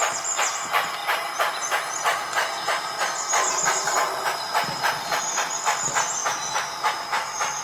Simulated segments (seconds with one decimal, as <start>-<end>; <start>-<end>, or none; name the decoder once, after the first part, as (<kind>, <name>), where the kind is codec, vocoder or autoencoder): 1.0-5.2 (vocoder, BigVGAN v2); 6.2-7.6